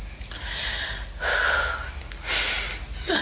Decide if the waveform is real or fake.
real